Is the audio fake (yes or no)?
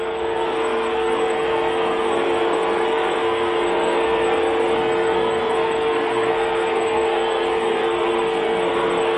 yes